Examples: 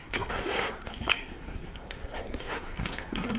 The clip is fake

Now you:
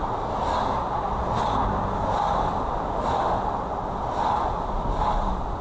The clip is real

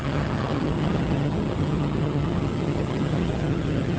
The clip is fake